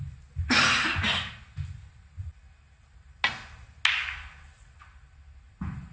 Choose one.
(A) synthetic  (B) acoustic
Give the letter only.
B